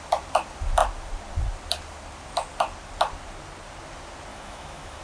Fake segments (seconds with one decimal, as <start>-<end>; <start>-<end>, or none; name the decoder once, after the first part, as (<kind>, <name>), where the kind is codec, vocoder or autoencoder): 4.3-5.0 (autoencoder, DAC-VAE)